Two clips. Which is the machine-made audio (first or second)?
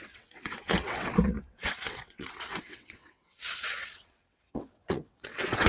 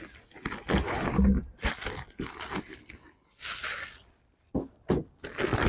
first